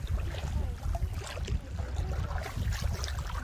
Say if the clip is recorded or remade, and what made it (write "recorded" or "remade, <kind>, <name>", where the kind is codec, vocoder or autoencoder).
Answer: recorded